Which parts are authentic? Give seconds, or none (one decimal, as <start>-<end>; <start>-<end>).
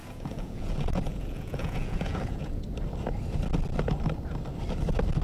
2.6-5.2